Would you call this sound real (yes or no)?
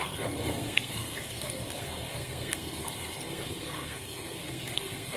no